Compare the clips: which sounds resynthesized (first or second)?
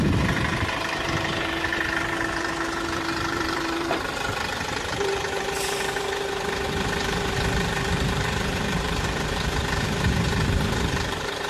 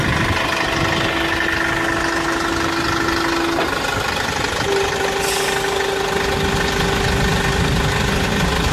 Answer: first